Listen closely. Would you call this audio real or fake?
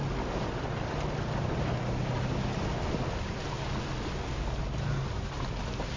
real